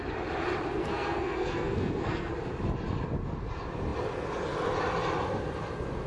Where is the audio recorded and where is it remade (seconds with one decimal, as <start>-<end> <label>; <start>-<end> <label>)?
0.0-0.8 recorded; 0.8-2.3 remade; 2.3-6.1 recorded